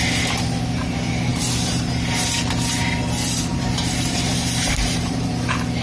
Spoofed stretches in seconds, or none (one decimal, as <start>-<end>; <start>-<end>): 3.5-5.3